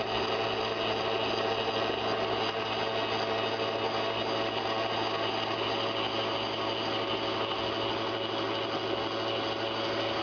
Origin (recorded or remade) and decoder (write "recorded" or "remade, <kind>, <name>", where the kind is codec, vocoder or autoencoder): recorded